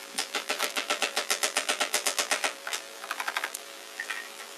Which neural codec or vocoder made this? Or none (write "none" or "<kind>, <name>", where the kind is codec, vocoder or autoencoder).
vocoder, BigVGAN v2